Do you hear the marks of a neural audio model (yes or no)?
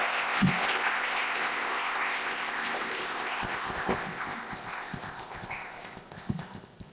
yes